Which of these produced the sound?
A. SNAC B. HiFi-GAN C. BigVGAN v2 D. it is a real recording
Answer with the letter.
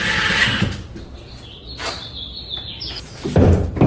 D